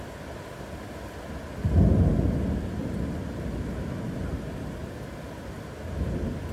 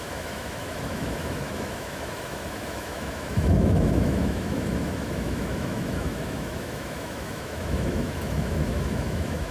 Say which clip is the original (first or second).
first